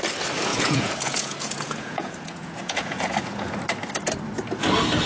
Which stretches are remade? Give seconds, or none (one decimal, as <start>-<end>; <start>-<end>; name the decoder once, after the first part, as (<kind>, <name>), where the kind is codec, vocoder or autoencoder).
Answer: 0.5-3.6 (vocoder, Vocos)

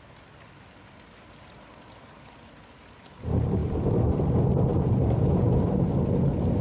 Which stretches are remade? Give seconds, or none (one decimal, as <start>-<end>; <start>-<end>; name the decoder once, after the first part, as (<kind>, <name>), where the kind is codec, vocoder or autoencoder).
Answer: 3.6-4.2 (vocoder, BigVGAN v2); 4.7-5.9